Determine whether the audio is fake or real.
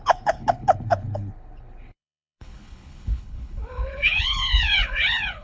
fake